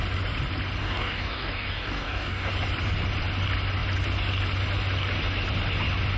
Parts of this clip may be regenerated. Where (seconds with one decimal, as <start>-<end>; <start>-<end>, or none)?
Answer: 0.8-2.5